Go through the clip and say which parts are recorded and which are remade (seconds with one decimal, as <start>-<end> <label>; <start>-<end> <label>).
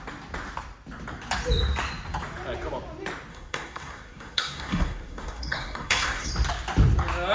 0.0-3.3 recorded; 3.3-6.3 remade; 6.3-7.3 recorded